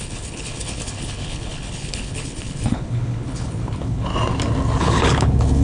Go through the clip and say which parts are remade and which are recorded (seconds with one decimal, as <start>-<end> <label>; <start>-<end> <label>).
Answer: 0.0-4.1 remade; 4.1-4.8 recorded; 4.8-5.6 remade